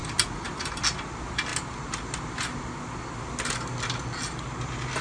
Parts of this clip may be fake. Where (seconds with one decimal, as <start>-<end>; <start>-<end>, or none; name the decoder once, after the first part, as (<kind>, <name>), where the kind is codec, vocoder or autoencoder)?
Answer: none